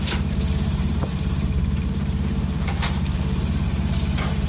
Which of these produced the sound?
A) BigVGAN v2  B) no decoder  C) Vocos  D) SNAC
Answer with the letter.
A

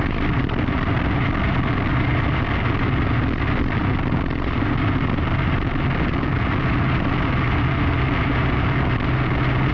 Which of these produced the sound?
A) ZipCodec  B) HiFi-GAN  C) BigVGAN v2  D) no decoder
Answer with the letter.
D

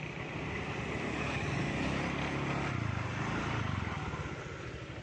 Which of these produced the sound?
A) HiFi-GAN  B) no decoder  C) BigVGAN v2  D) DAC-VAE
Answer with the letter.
B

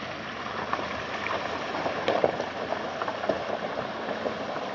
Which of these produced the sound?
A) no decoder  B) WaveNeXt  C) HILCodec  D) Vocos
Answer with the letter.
A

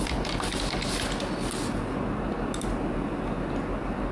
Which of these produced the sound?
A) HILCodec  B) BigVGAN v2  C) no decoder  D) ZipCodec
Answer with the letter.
C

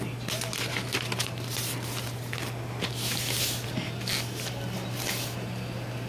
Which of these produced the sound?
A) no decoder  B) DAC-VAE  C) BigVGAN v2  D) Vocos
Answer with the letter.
A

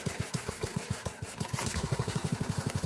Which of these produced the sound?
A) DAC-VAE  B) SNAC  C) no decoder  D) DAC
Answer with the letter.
B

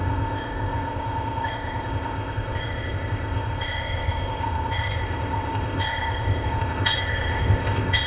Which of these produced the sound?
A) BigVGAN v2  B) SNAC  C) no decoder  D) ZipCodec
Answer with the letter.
D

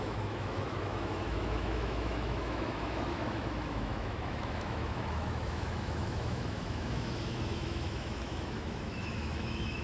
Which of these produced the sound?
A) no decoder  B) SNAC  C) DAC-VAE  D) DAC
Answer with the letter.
C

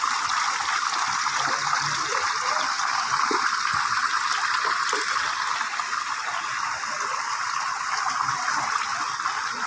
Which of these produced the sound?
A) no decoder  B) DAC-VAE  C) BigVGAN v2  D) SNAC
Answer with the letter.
A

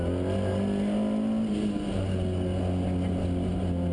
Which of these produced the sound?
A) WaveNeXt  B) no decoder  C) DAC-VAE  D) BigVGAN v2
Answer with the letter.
B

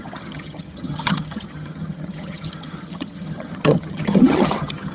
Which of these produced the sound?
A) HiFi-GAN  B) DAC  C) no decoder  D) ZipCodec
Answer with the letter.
A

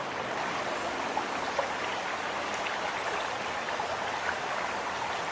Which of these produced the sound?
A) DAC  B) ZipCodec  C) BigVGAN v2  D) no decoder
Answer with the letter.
D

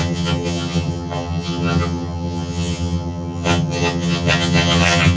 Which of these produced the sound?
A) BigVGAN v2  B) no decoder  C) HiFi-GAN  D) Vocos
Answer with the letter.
C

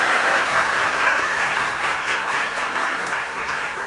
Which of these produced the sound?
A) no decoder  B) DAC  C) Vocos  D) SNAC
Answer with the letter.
D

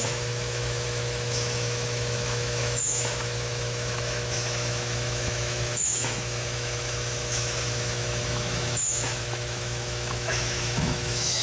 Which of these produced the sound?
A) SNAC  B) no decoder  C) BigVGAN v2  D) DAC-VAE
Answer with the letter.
D